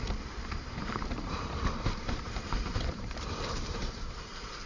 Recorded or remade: remade